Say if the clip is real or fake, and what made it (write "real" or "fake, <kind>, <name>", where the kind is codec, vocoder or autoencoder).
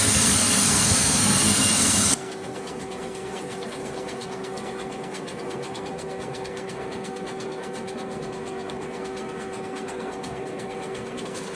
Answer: fake, codec, SNAC